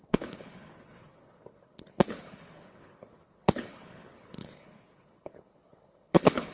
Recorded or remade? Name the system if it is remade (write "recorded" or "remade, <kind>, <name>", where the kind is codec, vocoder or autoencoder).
remade, codec, HILCodec